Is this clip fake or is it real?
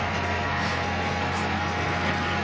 fake